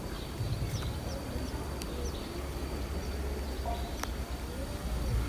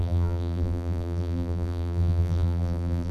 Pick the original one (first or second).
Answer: first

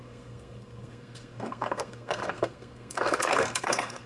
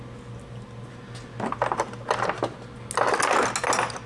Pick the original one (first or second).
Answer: second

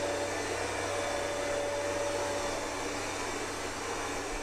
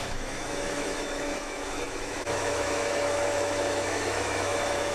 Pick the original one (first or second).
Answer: first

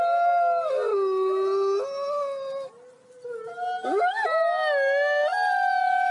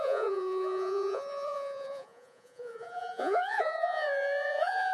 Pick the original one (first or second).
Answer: first